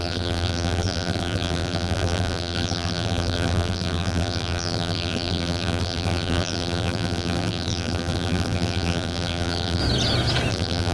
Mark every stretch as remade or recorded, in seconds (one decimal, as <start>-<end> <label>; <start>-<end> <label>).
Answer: 0.0-9.8 remade; 9.8-10.5 recorded; 10.5-10.9 remade